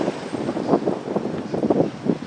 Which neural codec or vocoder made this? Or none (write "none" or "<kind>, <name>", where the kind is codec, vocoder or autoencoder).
none